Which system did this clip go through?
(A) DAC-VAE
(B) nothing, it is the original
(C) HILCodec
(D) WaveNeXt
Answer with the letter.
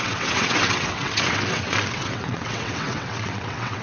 D